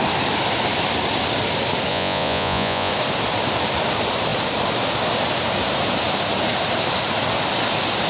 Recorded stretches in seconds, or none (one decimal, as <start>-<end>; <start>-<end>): 0.0-1.9; 2.9-8.1